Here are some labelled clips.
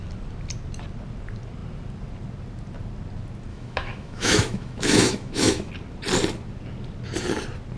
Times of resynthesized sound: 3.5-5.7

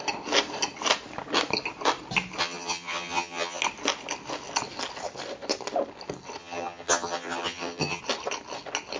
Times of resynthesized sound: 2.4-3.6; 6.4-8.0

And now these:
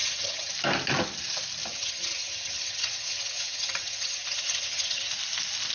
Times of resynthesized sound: 0.0-0.5; 1.7-5.1

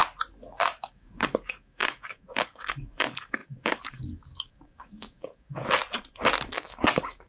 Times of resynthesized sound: 0.5-5.8; 6.4-7.3